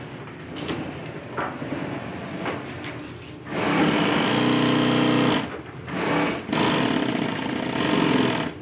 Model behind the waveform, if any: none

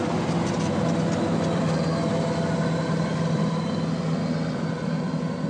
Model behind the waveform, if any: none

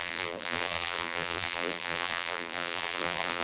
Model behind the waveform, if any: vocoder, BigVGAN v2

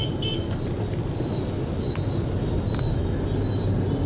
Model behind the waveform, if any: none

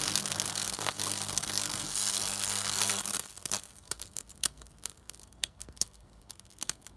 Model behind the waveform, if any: codec, SNAC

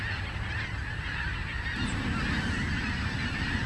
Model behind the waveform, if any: none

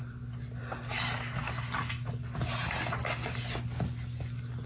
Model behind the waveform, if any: none